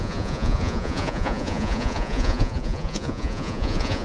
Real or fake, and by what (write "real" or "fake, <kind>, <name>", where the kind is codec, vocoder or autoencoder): fake, vocoder, Vocos